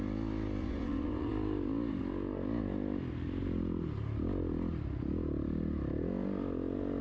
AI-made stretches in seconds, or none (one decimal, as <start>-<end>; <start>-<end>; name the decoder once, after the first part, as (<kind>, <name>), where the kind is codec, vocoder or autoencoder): 0.6-1.3 (vocoder, Vocos)